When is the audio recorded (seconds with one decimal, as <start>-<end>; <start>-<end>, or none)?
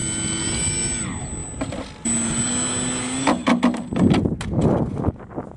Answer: 0.0-5.6